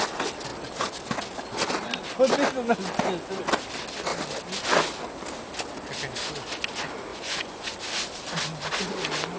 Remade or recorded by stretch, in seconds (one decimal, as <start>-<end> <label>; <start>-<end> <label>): 0.0-7.1 recorded; 7.1-7.7 remade; 7.7-9.4 recorded